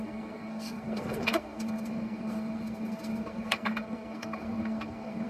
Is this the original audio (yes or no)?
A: no